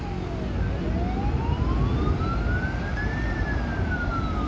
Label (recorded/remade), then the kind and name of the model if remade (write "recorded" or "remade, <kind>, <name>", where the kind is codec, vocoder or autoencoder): recorded